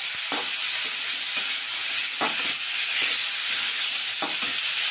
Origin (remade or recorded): recorded